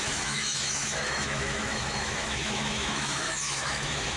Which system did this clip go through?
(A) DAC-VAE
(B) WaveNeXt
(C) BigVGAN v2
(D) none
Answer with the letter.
A